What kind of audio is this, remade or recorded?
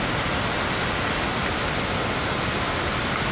recorded